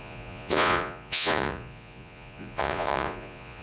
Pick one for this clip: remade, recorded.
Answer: remade